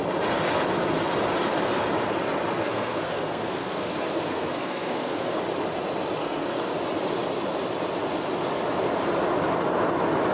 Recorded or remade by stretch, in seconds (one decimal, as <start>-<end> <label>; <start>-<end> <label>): 0.0-2.6 recorded; 2.6-5.4 remade; 5.4-6.2 recorded; 6.2-6.7 remade; 6.7-10.3 recorded

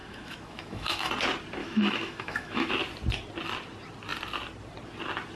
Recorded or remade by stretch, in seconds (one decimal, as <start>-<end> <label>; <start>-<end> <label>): 0.0-1.1 remade; 1.1-1.6 recorded; 1.6-2.7 remade; 2.7-5.4 recorded

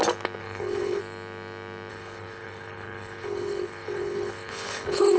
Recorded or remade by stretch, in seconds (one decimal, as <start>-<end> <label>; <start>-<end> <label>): 0.0-0.4 recorded; 0.4-1.0 remade; 1.0-1.9 recorded; 1.9-5.2 remade

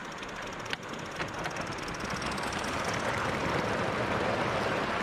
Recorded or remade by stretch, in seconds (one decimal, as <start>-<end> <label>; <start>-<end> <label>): 0.0-5.0 recorded

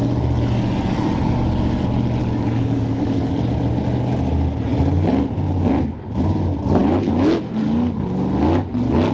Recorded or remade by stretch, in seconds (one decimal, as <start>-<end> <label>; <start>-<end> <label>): 0.0-2.2 recorded; 2.2-3.3 remade; 3.3-9.1 recorded

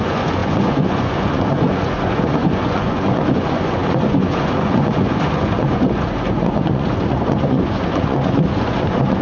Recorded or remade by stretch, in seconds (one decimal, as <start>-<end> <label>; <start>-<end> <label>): 0.0-9.2 remade

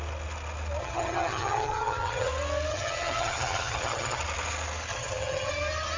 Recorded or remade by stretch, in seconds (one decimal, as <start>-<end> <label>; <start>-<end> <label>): 0.0-0.8 recorded; 0.8-2.3 remade; 2.3-2.7 recorded; 2.7-4.2 remade; 4.2-4.9 recorded; 4.9-5.5 remade; 5.5-6.0 recorded